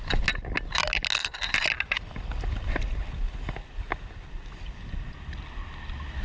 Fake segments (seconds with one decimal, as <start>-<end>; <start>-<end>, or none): none